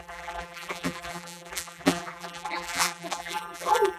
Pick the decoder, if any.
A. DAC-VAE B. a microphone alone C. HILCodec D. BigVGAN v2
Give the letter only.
D